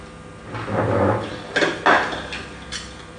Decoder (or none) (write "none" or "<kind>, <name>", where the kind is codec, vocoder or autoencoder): none